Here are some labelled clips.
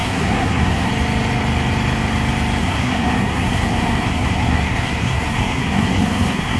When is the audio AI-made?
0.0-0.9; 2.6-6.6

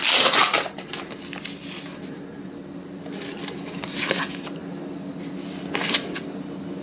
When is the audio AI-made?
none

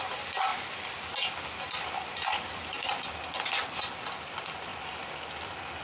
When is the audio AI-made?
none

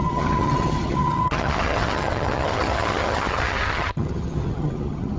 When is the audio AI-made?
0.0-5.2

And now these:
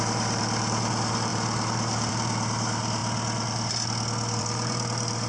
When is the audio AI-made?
0.0-3.0; 4.4-5.3